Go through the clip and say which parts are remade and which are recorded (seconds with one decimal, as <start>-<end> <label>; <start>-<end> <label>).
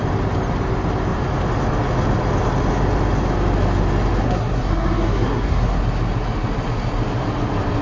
0.0-4.2 recorded; 4.2-5.8 remade; 5.8-7.8 recorded